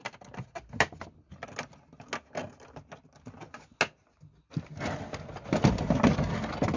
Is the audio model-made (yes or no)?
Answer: no